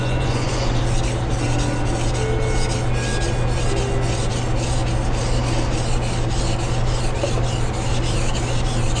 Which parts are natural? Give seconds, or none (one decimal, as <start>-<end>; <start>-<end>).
0.7-9.0